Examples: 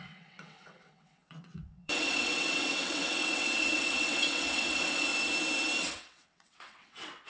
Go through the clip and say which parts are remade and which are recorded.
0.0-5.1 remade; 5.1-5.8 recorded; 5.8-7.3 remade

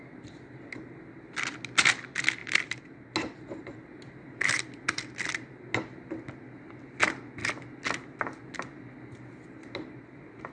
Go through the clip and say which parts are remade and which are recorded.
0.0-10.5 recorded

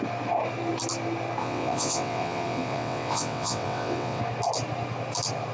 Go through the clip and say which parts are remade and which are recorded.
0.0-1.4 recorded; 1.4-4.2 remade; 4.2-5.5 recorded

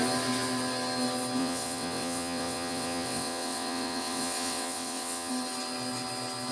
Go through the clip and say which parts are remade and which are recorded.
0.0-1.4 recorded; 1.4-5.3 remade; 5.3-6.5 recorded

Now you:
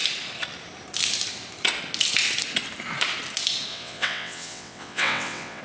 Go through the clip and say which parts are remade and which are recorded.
0.0-3.7 recorded; 3.7-5.6 remade